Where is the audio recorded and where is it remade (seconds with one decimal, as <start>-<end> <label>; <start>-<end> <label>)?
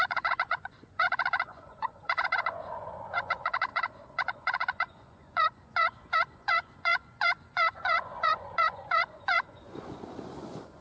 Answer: 0.0-10.8 remade